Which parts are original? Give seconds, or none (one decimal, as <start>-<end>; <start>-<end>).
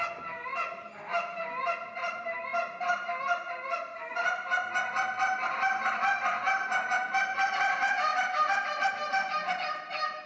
0.0-10.3